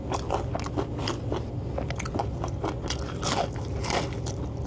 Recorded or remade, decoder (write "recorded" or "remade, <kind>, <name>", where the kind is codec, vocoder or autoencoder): recorded